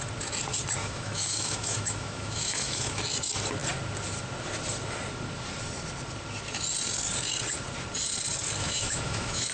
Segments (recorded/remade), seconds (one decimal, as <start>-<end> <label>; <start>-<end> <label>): 0.0-0.8 recorded; 0.8-3.0 remade; 3.0-8.6 recorded; 8.6-9.5 remade